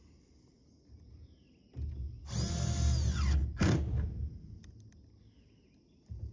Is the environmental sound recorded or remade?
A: recorded